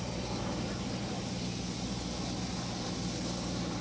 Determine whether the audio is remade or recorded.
recorded